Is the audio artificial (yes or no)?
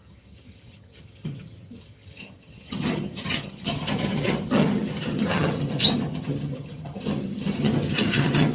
yes